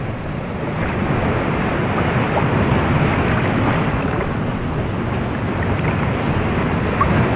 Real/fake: real